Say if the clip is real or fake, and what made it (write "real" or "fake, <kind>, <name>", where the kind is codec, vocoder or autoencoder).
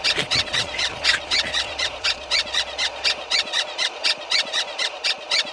fake, vocoder, Vocos